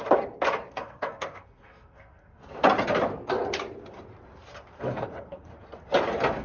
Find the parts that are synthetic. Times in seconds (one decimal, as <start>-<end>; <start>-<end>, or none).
0.7-2.4; 4.8-5.5